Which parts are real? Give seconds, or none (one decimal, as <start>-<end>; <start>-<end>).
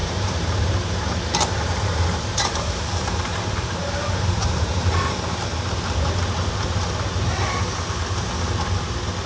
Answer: 4.9-9.3